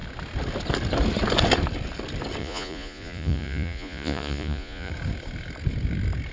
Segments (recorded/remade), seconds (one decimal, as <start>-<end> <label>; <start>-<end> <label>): 0.0-2.4 recorded; 2.4-4.9 remade; 4.9-6.3 recorded